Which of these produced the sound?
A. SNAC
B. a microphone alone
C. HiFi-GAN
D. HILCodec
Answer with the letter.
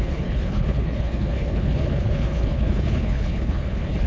D